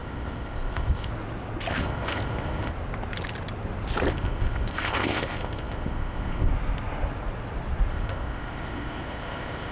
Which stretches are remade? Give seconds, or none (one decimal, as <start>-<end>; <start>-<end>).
0.0-1.1; 1.7-2.7; 4.1-6.5; 7.9-9.7